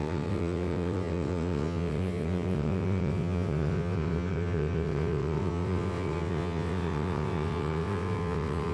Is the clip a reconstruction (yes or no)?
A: yes